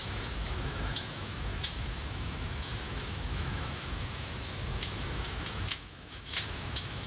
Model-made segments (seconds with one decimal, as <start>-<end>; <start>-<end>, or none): 0.0-7.1